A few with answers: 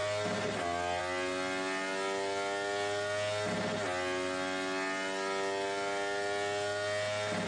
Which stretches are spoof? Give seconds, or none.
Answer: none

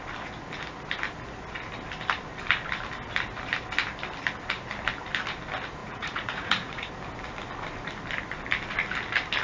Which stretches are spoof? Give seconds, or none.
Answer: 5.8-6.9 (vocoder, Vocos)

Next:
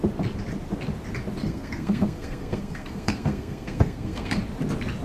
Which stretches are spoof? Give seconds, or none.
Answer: 1.4-4.4 (codec, SNAC)

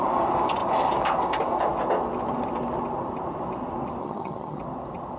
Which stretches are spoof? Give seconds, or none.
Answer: 4.0-4.6 (vocoder, HiFi-GAN)